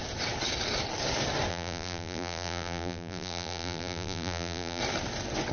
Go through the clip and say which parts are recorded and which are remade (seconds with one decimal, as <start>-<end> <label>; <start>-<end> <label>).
0.0-1.5 recorded; 1.5-4.8 remade; 4.8-5.5 recorded